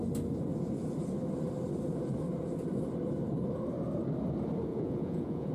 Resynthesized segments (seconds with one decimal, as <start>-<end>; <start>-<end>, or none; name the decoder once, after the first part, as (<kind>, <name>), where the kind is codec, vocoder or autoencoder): 4.7-5.5 (vocoder, Vocos)